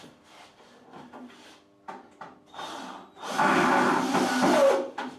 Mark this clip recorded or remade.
recorded